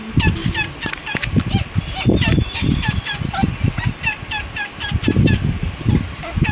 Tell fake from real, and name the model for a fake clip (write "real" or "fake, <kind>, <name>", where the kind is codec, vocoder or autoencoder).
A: real